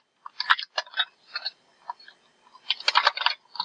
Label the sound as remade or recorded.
recorded